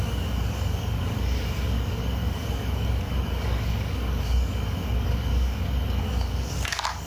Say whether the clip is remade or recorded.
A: remade